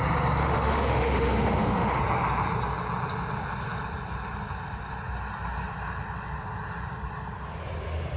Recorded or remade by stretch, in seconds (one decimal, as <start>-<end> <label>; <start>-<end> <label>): 0.0-0.4 recorded; 0.4-2.0 remade; 2.0-8.2 recorded